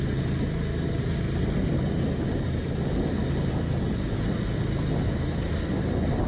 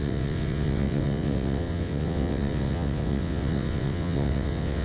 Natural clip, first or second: first